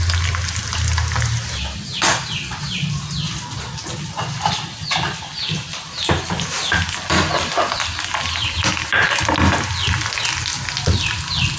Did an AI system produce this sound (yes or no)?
no